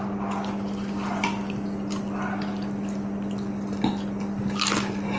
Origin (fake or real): real